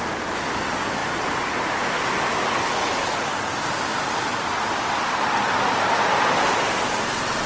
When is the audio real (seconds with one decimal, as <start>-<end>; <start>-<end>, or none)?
0.0-7.5